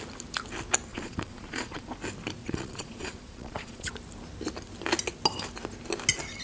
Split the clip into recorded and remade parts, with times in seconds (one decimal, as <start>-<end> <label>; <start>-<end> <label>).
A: 0.0-0.9 recorded; 0.9-1.9 remade; 1.9-2.4 recorded; 2.4-3.9 remade; 3.9-6.4 recorded